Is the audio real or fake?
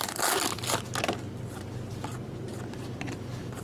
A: real